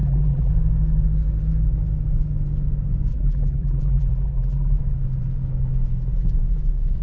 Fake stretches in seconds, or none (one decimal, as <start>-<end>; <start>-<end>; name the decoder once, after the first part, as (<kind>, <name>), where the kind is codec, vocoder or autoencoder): 0.0-0.5 (vocoder, BigVGAN v2); 3.1-4.8

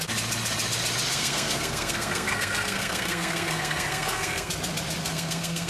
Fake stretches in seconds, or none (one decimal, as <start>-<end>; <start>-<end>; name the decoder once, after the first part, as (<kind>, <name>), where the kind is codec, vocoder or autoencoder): 1.1-4.5 (codec, SNAC); 5.0-5.7

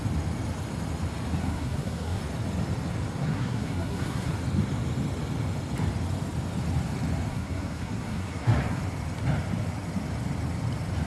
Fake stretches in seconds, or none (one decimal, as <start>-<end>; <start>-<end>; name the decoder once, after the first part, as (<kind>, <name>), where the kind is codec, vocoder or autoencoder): 1.4-2.2 (codec, SNAC); 3.2-4.3; 7.3-8.8